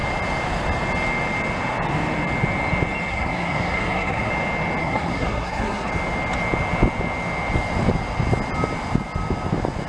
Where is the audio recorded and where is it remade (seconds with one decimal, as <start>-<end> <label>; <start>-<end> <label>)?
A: 0.0-3.1 recorded; 3.1-4.3 remade; 4.3-4.8 recorded; 4.8-5.9 remade; 5.9-9.9 recorded

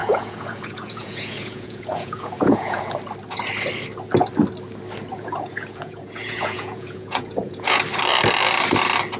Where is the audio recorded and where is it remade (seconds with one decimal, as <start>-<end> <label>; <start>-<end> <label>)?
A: 0.0-2.9 remade; 2.9-5.1 recorded; 5.1-7.8 remade; 7.8-9.2 recorded

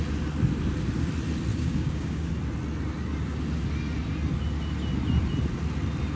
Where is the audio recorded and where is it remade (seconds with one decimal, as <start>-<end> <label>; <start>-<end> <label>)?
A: 0.0-1.5 recorded; 1.5-2.3 remade; 2.3-6.2 recorded

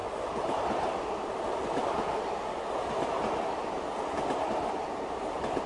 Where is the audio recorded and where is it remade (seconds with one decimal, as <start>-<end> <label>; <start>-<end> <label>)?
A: 0.0-5.7 recorded

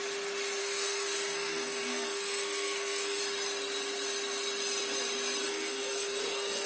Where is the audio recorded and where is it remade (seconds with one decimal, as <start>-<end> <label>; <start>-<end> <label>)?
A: 0.0-0.6 recorded; 0.6-3.2 remade; 3.2-5.4 recorded; 5.4-6.7 remade

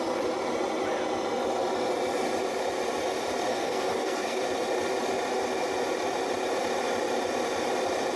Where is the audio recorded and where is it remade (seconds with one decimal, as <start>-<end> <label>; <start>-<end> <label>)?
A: 0.0-3.5 recorded; 3.5-4.4 remade; 4.4-8.2 recorded